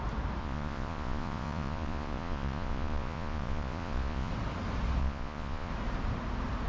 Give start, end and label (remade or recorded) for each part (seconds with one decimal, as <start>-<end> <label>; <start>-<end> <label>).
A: 0.0-0.4 recorded; 0.4-4.3 remade; 4.3-5.0 recorded; 5.0-5.7 remade; 5.7-6.7 recorded